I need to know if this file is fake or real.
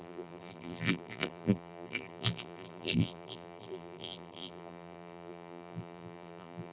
fake